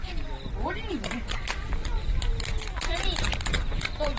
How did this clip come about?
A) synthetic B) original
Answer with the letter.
B